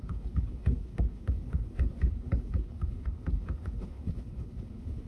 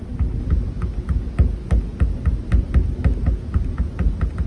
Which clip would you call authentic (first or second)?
second